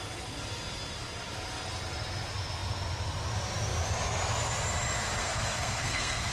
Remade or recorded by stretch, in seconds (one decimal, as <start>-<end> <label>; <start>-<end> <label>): 0.0-5.2 recorded; 5.2-6.3 remade